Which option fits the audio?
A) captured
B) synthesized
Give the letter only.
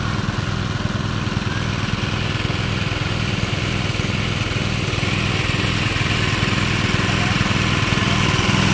A